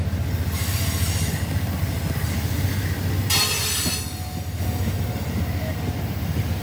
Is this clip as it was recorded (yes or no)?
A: yes